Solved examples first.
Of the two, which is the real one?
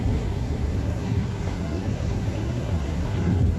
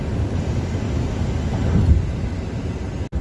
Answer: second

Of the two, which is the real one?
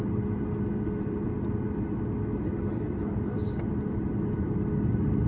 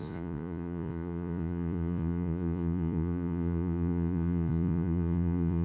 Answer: first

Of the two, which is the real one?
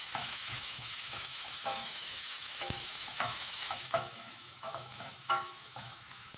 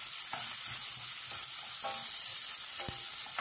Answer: second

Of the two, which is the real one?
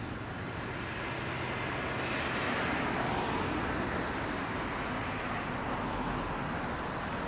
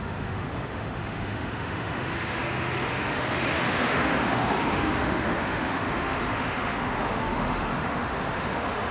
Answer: first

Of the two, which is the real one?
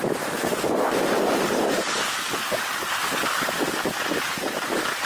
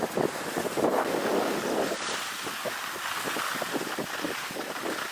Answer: second